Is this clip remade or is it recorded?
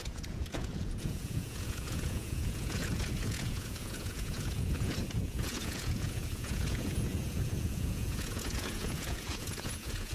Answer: remade